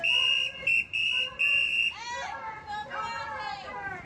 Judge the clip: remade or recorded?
recorded